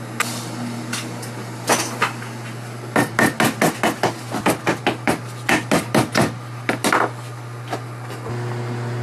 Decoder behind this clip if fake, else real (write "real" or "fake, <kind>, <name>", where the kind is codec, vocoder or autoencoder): real